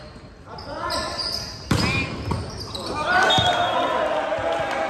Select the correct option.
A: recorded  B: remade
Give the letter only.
B